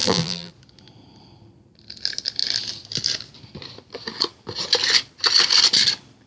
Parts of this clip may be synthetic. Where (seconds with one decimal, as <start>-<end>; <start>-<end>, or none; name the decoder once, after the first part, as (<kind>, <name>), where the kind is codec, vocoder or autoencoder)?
0.0-0.5 (vocoder, BigVGAN v2)